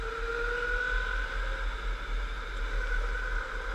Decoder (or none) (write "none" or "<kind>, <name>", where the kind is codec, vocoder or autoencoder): none